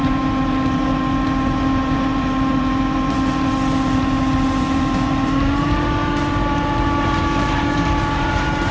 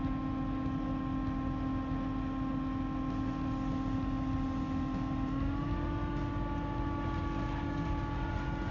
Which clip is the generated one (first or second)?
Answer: first